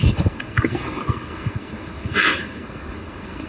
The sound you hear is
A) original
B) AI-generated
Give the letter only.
B